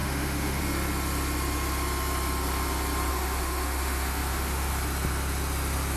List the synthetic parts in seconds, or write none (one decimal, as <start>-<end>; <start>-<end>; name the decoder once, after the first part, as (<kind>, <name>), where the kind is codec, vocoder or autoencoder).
0.0-0.6 (autoencoder, DAC-VAE); 3.1-4.7